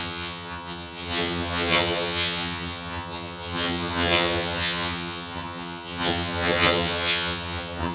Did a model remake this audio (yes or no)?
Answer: yes